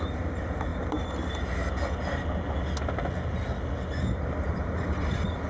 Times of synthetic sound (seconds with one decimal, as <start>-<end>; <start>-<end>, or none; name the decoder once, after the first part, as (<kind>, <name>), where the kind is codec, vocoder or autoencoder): none